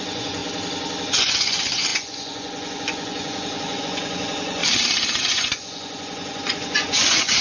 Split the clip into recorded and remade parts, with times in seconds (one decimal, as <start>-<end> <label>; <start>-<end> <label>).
0.0-0.4 remade; 0.4-1.1 recorded; 1.1-4.6 remade; 4.6-5.2 recorded; 5.2-7.4 remade